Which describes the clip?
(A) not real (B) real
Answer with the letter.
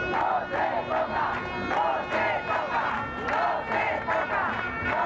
B